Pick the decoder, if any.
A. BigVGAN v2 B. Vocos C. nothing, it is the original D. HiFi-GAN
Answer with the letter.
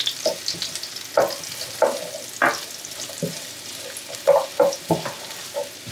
C